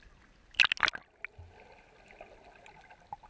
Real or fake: real